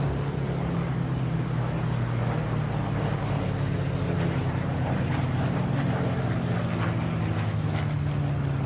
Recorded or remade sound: recorded